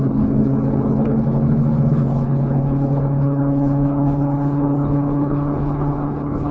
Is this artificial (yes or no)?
yes